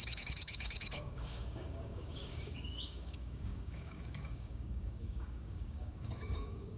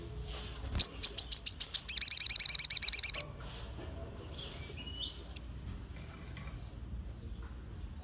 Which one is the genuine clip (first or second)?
second